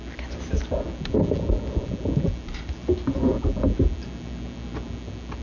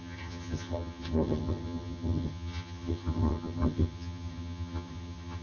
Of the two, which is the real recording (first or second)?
first